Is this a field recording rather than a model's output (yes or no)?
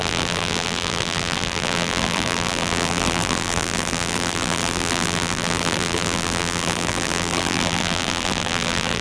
no